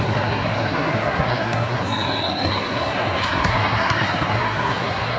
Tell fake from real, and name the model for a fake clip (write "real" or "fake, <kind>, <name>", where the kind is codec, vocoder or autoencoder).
fake, codec, SNAC